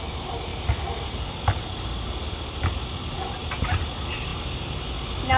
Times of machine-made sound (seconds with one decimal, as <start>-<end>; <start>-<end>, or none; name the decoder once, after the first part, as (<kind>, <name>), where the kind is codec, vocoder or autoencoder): 0.5-1.3 (vocoder, BigVGAN v2)